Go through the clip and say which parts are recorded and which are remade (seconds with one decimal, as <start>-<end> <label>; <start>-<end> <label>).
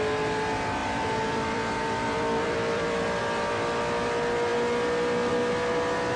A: 0.0-0.8 recorded; 0.8-3.2 remade; 3.2-6.2 recorded